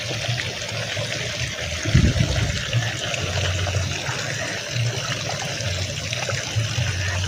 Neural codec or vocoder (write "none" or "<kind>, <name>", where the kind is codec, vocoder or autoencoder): none